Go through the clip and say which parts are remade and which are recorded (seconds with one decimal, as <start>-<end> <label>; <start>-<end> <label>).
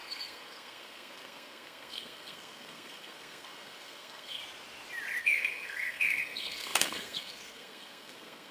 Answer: 0.0-4.4 remade; 4.4-5.2 recorded; 5.2-8.5 remade